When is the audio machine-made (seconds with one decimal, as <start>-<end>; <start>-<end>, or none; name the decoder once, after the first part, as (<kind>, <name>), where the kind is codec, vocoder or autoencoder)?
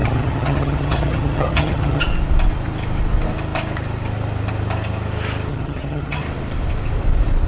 0.0-2.0 (vocoder, HiFi-GAN); 5.5-6.2